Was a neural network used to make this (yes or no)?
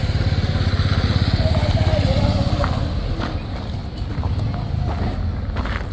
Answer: no